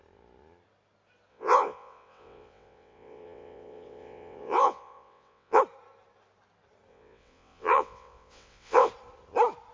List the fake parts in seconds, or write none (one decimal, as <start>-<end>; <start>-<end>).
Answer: 1.3-5.6; 6.9-8.9